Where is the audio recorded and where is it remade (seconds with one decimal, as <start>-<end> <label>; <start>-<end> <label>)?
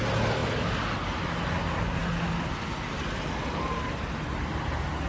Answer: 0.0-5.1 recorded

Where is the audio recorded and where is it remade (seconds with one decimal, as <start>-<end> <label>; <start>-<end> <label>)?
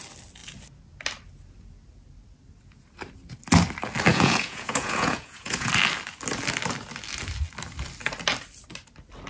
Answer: 0.0-4.1 recorded; 4.1-5.7 remade; 5.7-9.3 recorded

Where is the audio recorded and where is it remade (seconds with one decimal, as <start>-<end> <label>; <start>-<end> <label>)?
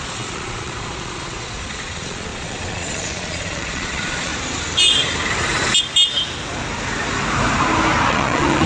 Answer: 0.0-4.3 remade; 4.3-8.1 recorded; 8.1-8.7 remade